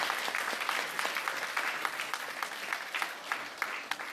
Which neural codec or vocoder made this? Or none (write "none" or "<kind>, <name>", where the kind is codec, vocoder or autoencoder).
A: vocoder, BigVGAN v2